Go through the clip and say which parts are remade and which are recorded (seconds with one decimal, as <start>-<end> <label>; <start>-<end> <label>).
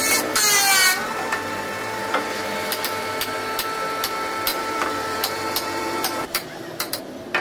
0.0-4.5 recorded; 4.5-7.0 remade; 7.0-7.4 recorded